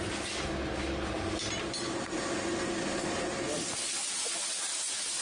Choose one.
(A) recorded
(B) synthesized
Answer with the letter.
A